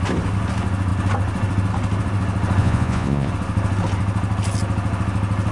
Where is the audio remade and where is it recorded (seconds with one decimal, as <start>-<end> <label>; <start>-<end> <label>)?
0.0-2.6 recorded; 2.6-3.3 remade; 3.3-5.5 recorded